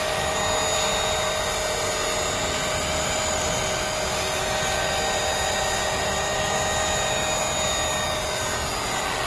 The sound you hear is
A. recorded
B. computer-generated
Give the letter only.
A